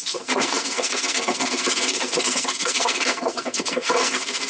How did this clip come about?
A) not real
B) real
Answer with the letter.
A